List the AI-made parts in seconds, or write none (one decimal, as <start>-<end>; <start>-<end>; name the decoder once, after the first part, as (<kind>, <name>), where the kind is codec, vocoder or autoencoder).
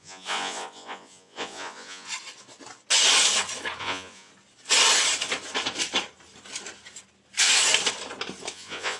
0.0-2.1 (vocoder, Vocos); 3.8-4.3; 8.5-9.0